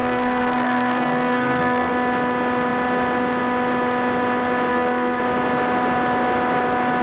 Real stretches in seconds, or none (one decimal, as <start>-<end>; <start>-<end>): 1.9-4.7; 5.2-7.0